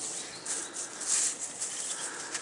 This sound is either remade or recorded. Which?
recorded